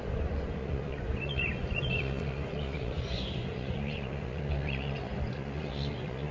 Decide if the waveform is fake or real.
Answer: fake